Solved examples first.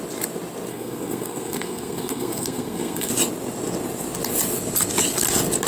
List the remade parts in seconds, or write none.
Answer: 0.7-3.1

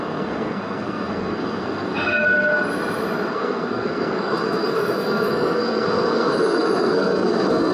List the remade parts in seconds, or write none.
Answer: 0.0-2.5; 3.3-7.7

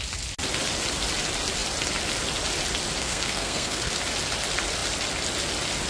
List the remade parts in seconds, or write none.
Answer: 3.0-3.9

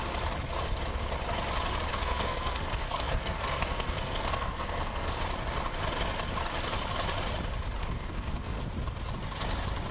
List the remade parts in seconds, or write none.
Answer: 1.9-5.2; 7.8-8.6

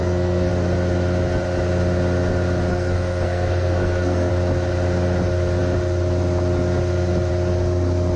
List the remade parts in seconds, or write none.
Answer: 0.0-0.5; 2.7-4.3

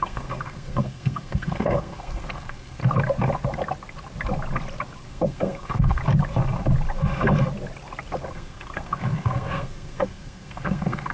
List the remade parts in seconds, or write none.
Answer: 0.0-2.8; 5.0-6.0; 8.3-11.1

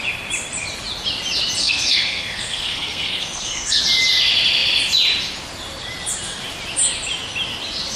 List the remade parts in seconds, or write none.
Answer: 1.6-3.8

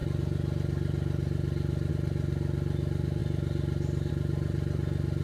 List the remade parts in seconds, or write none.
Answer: none